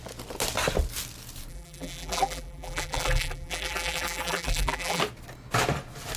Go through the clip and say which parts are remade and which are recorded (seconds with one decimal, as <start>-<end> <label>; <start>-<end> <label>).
0.0-1.5 recorded; 1.5-5.0 remade; 5.0-6.2 recorded